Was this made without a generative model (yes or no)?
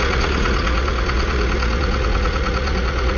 no